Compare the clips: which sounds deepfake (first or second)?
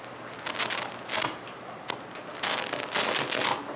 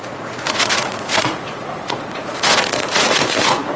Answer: second